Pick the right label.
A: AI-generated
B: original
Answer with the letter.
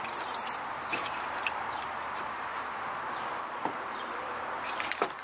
A